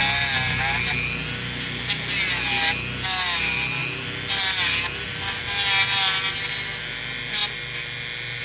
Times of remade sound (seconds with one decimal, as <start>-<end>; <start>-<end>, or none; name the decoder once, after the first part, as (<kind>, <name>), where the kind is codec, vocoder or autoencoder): none